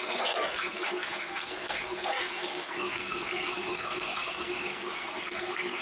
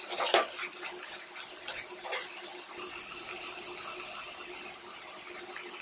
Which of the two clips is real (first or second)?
second